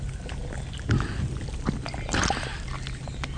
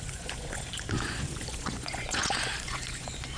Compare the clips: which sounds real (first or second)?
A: first